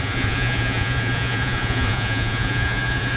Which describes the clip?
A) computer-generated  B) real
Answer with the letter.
A